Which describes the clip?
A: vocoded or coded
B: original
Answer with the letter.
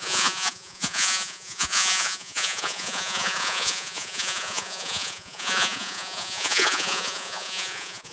A